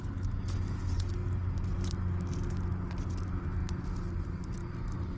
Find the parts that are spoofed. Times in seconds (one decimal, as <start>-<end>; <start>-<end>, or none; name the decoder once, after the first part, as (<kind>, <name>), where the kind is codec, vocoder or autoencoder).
none